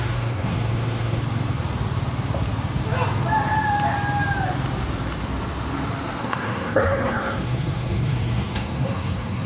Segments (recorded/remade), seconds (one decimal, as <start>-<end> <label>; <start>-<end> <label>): 0.0-1.2 remade; 1.2-6.2 recorded; 6.2-9.5 remade